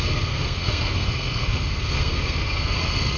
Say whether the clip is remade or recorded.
remade